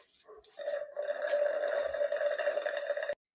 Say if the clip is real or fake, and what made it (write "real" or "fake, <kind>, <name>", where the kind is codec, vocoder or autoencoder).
real